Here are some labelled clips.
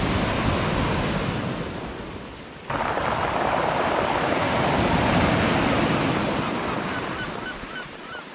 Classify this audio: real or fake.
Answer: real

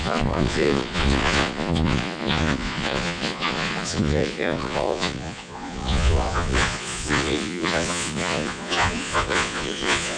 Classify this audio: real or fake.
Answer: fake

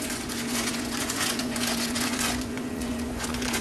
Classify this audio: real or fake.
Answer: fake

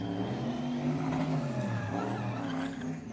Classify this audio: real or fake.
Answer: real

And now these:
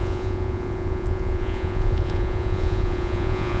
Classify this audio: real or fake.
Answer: fake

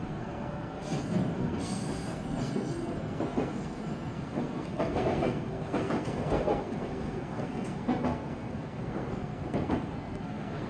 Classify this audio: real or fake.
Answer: fake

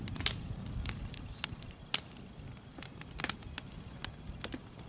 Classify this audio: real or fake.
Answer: real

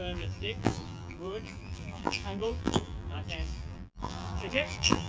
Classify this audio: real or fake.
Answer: fake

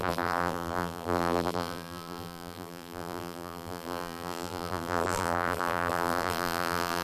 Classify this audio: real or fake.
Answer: fake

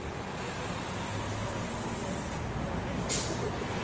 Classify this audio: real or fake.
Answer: real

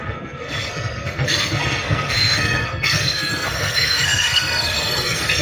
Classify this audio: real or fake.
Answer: fake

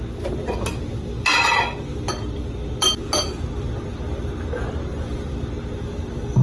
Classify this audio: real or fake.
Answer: real